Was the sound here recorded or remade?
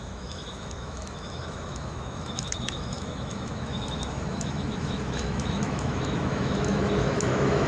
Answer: remade